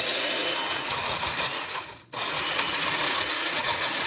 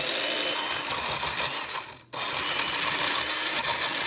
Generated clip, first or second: first